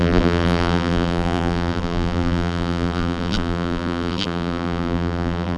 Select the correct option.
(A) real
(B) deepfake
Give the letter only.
B